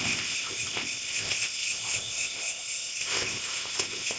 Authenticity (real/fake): fake